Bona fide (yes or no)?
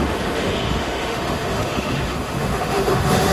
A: no